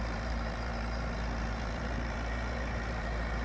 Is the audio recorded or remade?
remade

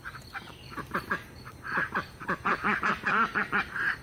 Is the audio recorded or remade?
remade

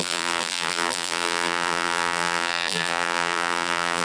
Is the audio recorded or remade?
remade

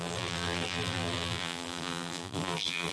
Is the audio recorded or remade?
remade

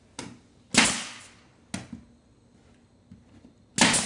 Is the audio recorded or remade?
recorded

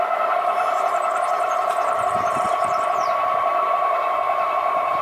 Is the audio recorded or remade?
remade